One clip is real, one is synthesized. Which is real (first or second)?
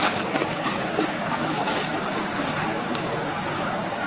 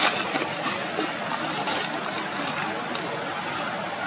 second